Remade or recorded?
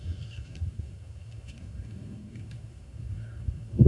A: remade